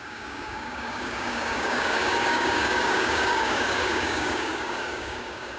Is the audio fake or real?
fake